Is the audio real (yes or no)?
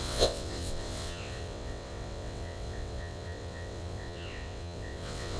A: no